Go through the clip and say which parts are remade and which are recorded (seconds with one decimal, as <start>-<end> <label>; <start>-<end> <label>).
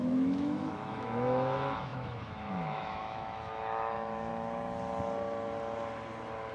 0.0-4.3 remade; 4.3-6.5 recorded